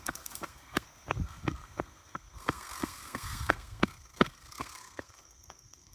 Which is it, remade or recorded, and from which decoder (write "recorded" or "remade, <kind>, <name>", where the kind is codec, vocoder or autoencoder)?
remade, codec, SNAC